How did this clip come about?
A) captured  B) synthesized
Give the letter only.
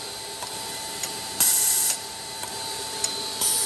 B